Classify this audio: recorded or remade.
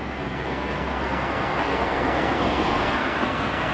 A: remade